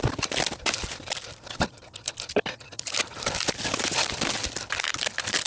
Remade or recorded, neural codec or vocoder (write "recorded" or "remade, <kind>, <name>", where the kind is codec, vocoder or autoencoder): remade, vocoder, BigVGAN v2